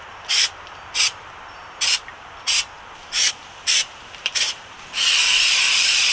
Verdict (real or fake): fake